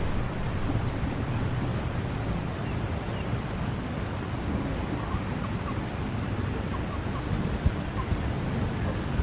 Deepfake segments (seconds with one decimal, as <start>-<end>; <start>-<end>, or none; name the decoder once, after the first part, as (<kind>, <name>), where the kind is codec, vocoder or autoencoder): none